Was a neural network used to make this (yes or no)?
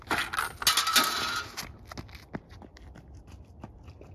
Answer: no